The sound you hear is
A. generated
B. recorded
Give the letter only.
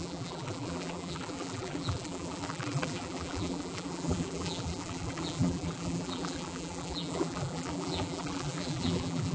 A